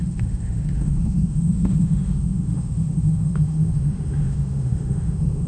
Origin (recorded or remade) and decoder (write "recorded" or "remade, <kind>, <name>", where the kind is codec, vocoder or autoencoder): remade, autoencoder, DAC-VAE